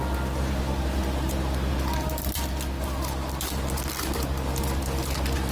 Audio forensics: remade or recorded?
recorded